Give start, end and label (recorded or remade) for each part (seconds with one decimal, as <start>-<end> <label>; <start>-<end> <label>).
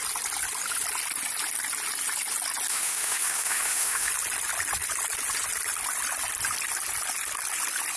0.0-2.7 recorded; 2.7-4.1 remade; 4.1-8.0 recorded